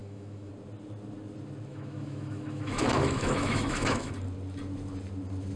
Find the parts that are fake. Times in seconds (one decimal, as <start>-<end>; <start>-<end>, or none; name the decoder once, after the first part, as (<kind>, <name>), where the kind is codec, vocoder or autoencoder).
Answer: 0.0-0.5 (autoencoder, DAC-VAE); 1.7-4.1